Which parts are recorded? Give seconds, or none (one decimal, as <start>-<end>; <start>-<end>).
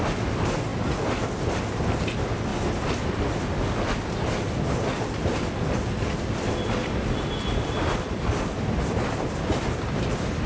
0.0-0.7; 1.6-6.8